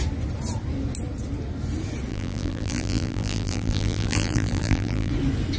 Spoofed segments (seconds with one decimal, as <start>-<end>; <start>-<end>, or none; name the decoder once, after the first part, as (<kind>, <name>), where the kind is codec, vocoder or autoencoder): 2.1-5.1 (vocoder, BigVGAN v2)